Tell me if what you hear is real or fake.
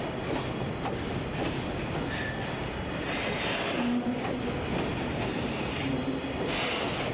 real